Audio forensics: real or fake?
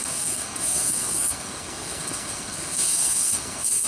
fake